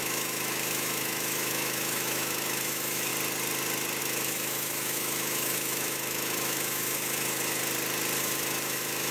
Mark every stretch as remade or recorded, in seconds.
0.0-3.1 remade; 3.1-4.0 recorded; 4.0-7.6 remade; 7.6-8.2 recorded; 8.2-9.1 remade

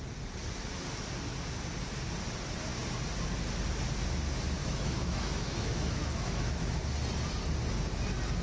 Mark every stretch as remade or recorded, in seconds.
0.0-4.6 recorded; 4.6-6.8 remade; 6.8-8.4 recorded

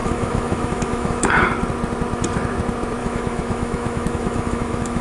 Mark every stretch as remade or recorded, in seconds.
0.0-1.3 remade; 1.3-3.0 recorded; 3.0-5.0 remade